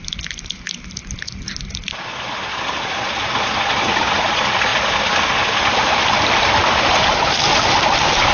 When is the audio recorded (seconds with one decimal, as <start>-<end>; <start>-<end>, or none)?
0.0-8.3